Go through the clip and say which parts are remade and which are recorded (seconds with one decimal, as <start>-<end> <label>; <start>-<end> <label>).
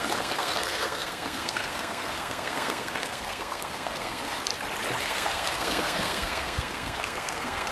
0.0-4.5 remade; 4.5-5.0 recorded; 5.0-7.7 remade